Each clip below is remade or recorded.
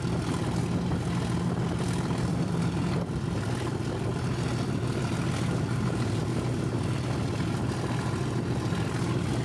remade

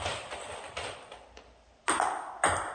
recorded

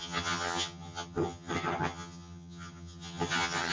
remade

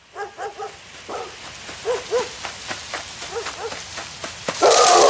recorded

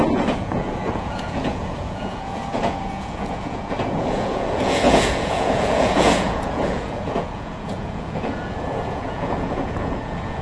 remade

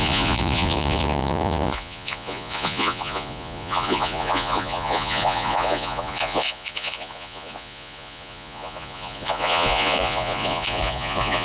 remade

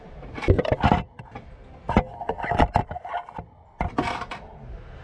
recorded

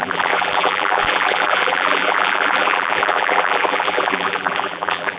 remade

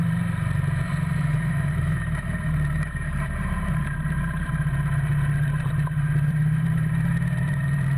remade